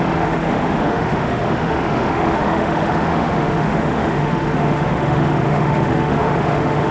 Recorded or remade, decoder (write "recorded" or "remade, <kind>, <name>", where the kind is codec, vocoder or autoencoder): remade, autoencoder, DAC-VAE